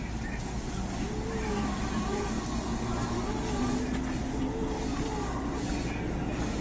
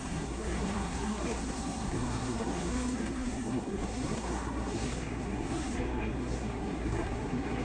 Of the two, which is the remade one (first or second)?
second